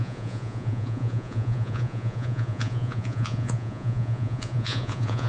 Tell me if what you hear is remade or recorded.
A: remade